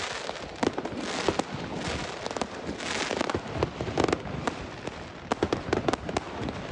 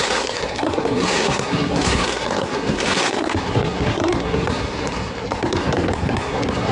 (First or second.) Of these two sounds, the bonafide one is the first